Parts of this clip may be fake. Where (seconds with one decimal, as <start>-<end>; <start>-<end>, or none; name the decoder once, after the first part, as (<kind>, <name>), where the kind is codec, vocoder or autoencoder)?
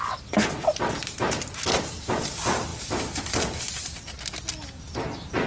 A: none